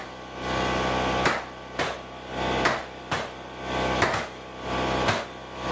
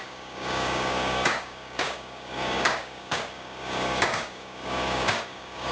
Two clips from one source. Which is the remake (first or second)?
second